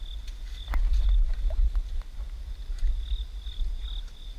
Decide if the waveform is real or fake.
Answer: real